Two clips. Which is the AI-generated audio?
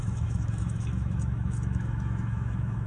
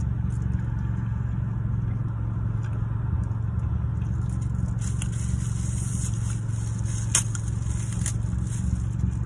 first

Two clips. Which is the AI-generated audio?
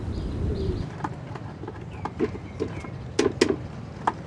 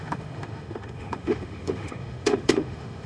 second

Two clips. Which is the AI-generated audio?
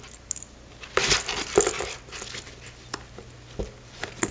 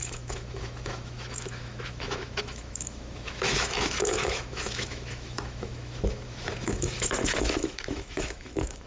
second